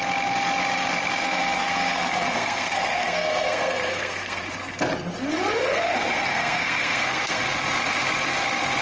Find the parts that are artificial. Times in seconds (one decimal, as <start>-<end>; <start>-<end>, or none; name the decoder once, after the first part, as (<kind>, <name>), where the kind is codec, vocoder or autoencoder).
1.2-4.4 (codec, SNAC); 5.7-7.4